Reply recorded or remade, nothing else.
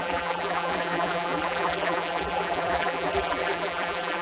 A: remade